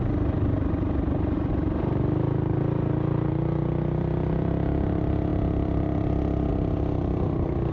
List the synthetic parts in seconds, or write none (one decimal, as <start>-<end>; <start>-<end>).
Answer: none